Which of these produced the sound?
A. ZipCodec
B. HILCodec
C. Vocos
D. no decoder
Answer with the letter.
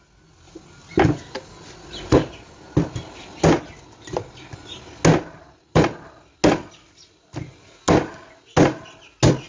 D